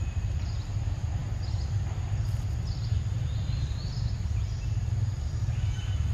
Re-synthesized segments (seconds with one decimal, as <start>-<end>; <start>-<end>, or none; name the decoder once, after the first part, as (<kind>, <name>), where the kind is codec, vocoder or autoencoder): none